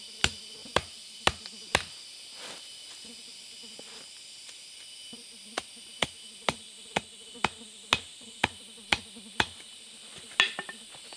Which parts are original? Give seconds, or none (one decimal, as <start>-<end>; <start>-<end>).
0.0-0.6; 1.4-8.1; 9.0-11.2